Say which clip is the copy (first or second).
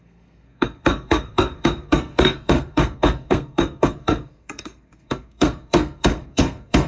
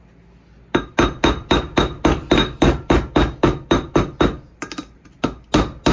first